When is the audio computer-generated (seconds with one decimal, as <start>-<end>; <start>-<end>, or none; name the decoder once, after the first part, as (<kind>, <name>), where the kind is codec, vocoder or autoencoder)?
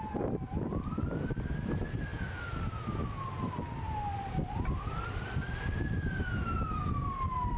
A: none